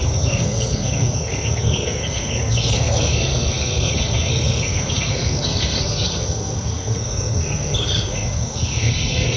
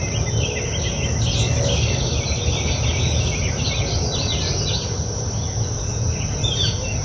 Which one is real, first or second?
second